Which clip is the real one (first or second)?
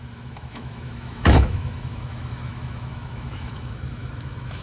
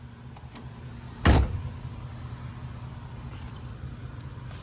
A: second